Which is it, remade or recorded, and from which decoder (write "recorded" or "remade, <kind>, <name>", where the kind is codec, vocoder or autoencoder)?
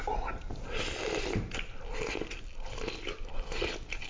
recorded